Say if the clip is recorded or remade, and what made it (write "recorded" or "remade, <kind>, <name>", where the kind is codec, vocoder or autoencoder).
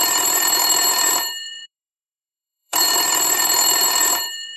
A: remade, vocoder, BigVGAN v2